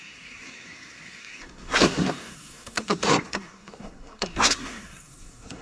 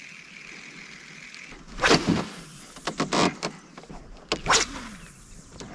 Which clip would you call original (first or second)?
second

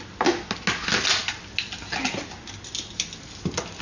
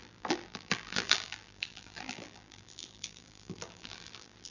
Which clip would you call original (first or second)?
first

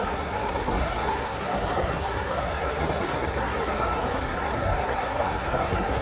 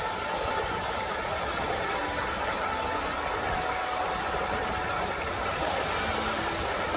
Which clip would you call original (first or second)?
second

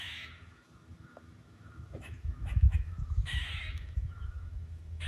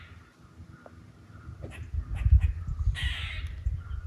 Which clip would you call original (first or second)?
second